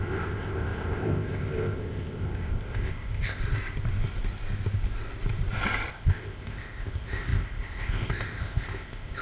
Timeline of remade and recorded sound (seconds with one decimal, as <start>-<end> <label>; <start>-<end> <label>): 0.0-3.4 remade; 3.4-5.9 recorded; 5.9-9.2 remade